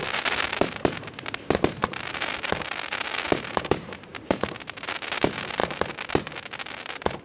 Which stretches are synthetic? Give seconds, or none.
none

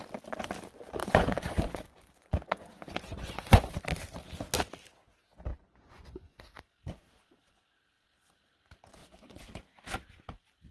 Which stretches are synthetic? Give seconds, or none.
1.0-3.7 (vocoder, Vocos); 5.5-6.4; 9.0-9.5

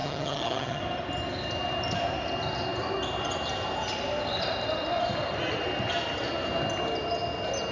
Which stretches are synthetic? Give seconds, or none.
0.0-0.8 (vocoder, HiFi-GAN)

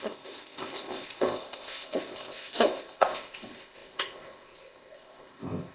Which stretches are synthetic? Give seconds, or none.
0.0-5.7 (codec, ZipCodec)

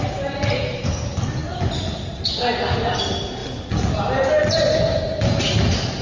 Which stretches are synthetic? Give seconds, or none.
none

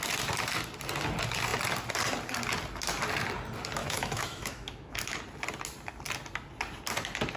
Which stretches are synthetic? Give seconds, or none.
3.8-5.2 (autoencoder, DAC-VAE)